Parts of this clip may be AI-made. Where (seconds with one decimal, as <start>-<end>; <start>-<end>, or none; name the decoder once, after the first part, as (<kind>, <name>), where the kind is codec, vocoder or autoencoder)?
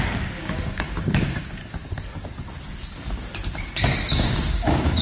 0.0-1.6 (codec, DAC); 4.1-5.0